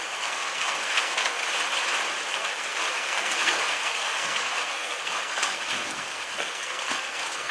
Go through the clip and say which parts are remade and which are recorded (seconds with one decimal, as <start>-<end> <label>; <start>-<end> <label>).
0.0-1.4 remade; 1.4-2.3 recorded; 2.3-7.5 remade